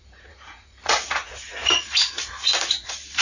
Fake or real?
fake